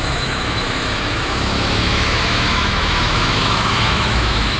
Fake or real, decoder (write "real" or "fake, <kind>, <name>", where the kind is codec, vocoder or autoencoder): fake, autoencoder, DAC-VAE